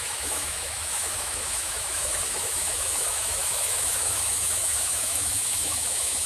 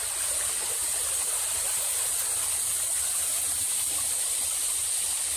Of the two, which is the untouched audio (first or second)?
second